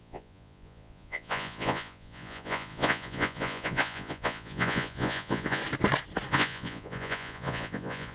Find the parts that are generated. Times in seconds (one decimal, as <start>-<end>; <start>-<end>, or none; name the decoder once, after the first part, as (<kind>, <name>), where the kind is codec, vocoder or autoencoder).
0.0-5.6 (vocoder, Vocos); 6.3-8.1